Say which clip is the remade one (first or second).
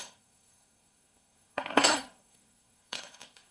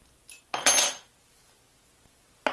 first